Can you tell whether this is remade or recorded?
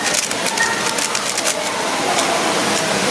recorded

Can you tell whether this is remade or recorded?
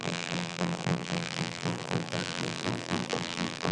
remade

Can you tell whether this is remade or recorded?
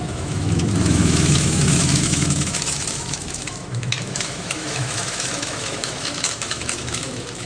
remade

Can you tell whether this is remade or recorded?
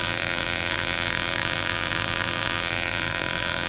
remade